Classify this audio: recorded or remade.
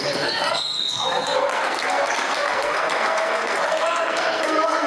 remade